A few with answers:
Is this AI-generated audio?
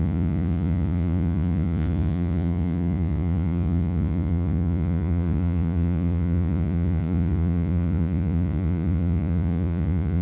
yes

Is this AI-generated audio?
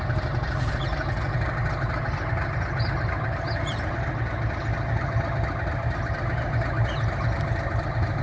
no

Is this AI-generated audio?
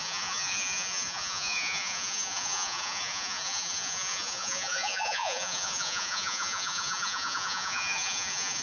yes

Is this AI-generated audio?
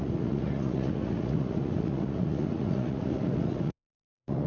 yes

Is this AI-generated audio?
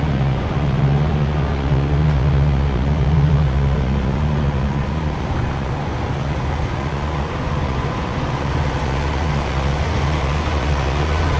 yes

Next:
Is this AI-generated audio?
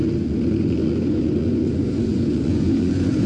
yes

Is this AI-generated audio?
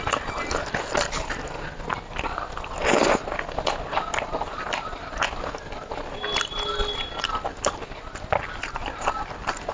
no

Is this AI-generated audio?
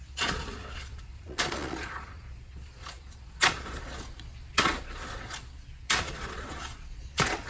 yes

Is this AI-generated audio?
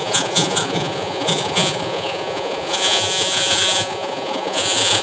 yes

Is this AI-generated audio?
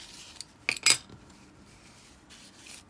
no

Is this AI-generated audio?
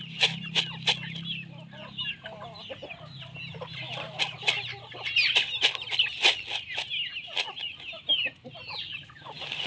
no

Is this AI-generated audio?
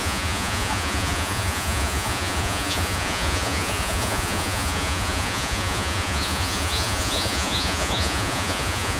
yes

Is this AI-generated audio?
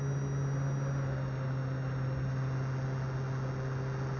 no